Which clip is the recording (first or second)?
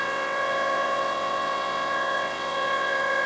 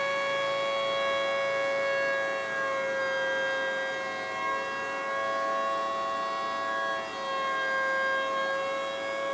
second